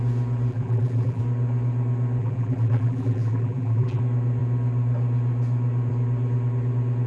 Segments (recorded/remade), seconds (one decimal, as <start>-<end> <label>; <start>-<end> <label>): 0.0-0.5 recorded; 0.5-1.2 remade; 1.2-2.2 recorded; 2.2-4.0 remade; 4.0-7.1 recorded